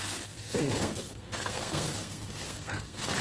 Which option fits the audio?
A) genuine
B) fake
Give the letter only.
B